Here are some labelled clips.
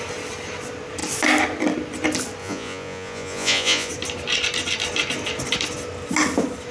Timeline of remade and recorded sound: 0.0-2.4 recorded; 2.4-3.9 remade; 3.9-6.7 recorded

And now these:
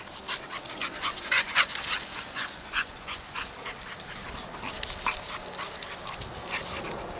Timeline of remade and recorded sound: 0.0-0.8 recorded; 0.8-3.5 remade; 3.5-7.2 recorded

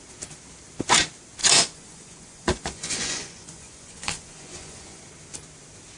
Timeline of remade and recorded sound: 0.0-1.4 recorded; 1.4-5.0 remade; 5.0-6.0 recorded